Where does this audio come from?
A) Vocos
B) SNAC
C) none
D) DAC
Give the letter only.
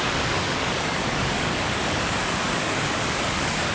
D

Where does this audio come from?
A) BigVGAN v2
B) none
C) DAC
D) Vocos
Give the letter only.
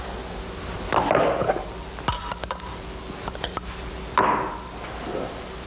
B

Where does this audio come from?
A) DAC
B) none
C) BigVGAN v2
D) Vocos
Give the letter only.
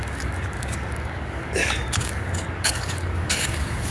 A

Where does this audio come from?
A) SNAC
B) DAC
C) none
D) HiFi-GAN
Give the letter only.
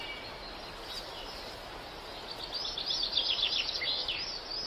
C